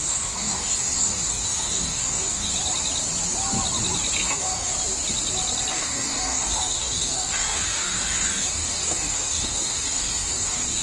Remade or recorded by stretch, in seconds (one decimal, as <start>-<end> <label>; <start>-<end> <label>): 0.0-2.5 remade; 2.5-4.2 recorded; 4.2-4.7 remade; 4.7-5.7 recorded; 5.7-10.8 remade